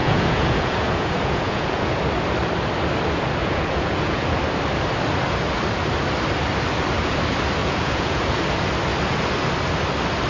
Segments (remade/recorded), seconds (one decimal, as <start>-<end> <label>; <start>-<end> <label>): 0.0-2.0 remade; 2.0-3.4 recorded; 3.4-4.4 remade; 4.4-7.6 recorded; 7.6-8.4 remade; 8.4-10.3 recorded